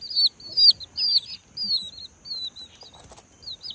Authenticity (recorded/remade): recorded